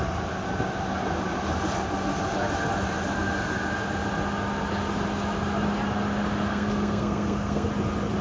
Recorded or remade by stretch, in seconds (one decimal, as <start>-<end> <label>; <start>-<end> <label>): 0.0-6.5 recorded; 6.5-7.7 remade; 7.7-8.2 recorded

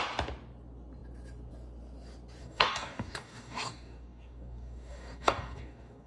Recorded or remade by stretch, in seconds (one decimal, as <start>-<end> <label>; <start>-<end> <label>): 0.0-2.4 recorded; 2.4-6.1 remade

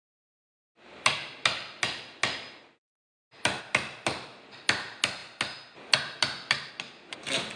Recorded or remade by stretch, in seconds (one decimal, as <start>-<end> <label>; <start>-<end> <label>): 0.0-7.6 recorded

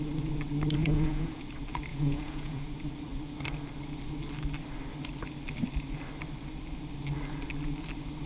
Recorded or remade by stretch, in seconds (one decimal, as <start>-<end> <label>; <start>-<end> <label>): 0.0-0.8 recorded; 0.8-1.4 remade; 1.4-1.9 recorded; 1.9-2.7 remade; 2.7-8.3 recorded

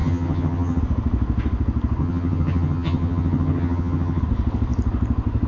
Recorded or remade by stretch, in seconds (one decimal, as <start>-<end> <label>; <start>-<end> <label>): 0.0-0.8 remade; 0.8-2.0 recorded; 2.0-4.2 remade; 4.2-5.5 recorded

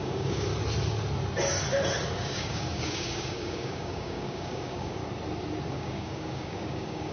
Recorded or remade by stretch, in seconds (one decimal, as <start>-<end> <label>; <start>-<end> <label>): 0.0-0.5 remade; 0.5-2.2 recorded; 2.2-5.0 remade; 5.0-5.7 recorded; 5.7-7.1 remade

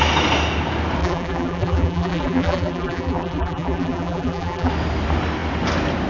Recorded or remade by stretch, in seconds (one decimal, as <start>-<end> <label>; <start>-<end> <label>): 0.0-1.0 recorded; 1.0-4.7 remade; 4.7-6.1 recorded

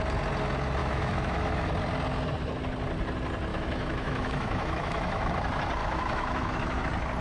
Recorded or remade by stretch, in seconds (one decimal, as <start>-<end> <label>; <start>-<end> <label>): 0.0-0.8 recorded; 0.8-1.7 remade; 1.7-3.5 recorded; 3.5-5.3 remade; 5.3-5.8 recorded; 5.8-6.8 remade; 6.8-7.2 recorded